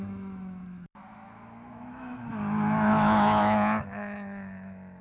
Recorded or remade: remade